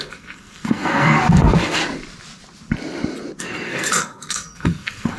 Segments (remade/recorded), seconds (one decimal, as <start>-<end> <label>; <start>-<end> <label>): 0.0-1.8 remade; 1.8-3.4 recorded; 3.4-5.2 remade